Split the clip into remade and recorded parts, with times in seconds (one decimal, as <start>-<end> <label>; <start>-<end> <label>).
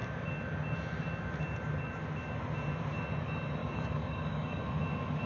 0.0-3.6 recorded; 3.6-4.6 remade; 4.6-5.3 recorded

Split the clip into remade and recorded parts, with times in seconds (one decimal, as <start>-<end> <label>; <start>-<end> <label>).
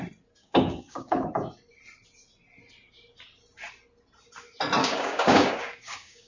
0.0-0.4 recorded; 0.4-1.3 remade; 1.3-4.8 recorded; 4.8-6.3 remade